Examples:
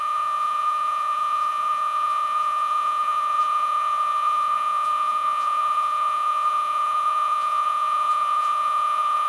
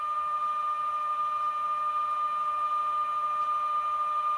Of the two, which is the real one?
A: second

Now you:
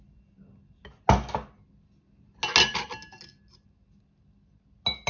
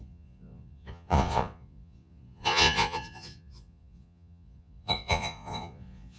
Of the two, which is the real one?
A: first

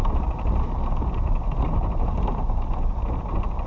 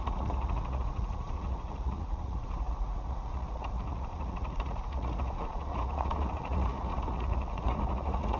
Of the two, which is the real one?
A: first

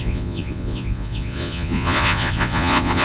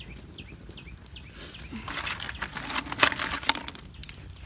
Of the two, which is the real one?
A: second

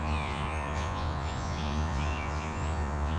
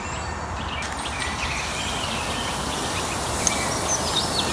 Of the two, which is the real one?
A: second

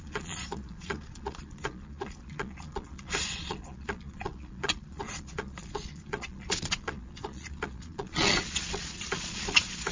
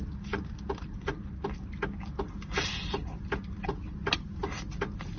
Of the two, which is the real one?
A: second